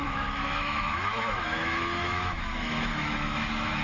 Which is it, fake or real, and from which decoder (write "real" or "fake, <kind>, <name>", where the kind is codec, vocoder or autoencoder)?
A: fake, autoencoder, DAC-VAE